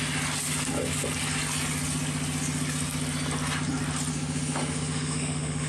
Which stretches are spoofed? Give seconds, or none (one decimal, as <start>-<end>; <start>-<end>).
4.1-5.7